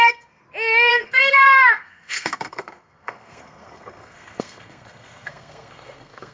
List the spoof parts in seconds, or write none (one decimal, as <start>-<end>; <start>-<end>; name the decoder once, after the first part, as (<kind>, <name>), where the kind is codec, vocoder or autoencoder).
0.0-0.4 (codec, SNAC); 0.9-6.3